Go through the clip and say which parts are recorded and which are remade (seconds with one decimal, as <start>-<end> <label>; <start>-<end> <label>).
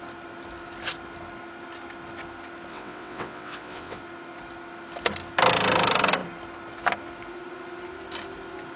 0.0-2.7 recorded; 2.7-4.0 remade; 4.0-8.8 recorded